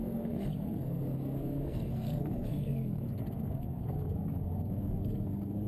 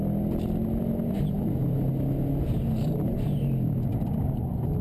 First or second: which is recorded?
second